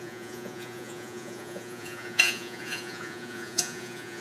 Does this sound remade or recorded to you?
remade